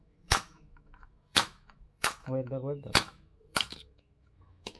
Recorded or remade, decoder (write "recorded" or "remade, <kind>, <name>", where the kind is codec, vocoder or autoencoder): remade, autoencoder, DAC-VAE